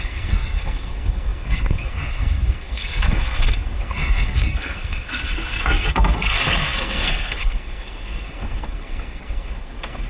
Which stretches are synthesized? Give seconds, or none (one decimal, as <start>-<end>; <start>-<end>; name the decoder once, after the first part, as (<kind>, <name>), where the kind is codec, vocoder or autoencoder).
0.0-10.1 (codec, SNAC)